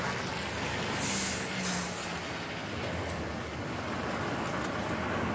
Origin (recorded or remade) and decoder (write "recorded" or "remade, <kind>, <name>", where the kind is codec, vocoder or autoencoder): recorded